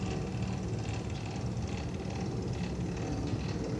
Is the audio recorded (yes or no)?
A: yes